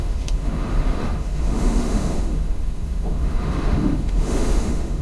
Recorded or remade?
remade